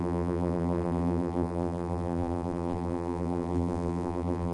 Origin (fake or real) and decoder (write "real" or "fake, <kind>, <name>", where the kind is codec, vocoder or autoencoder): fake, vocoder, BigVGAN v2